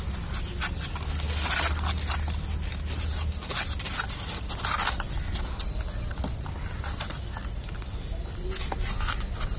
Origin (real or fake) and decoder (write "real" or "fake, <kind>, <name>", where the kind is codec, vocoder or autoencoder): real